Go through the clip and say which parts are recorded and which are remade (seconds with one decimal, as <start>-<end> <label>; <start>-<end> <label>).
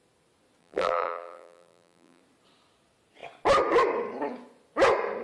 0.0-0.6 recorded; 0.6-2.2 remade; 2.2-5.2 recorded